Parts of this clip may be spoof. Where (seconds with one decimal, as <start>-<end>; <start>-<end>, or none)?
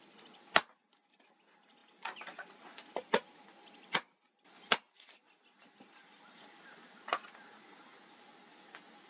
none